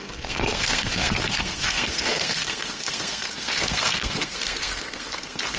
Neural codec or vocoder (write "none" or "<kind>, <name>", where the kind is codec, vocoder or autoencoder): codec, SNAC